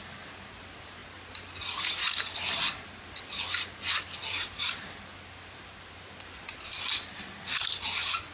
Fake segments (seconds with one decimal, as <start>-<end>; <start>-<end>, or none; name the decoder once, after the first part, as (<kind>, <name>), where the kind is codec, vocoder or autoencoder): none